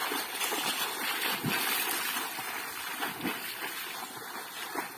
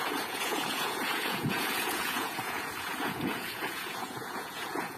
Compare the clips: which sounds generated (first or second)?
second